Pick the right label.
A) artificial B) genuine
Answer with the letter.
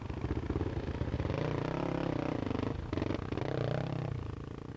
B